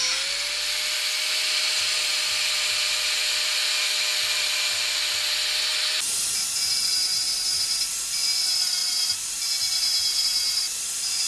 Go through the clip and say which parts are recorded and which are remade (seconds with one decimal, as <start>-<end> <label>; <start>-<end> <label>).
0.0-11.3 recorded